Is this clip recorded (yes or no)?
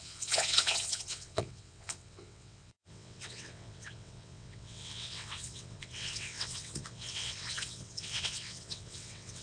no